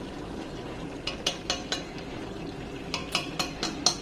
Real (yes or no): yes